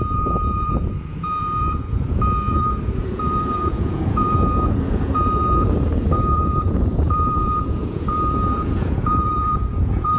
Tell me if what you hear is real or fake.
fake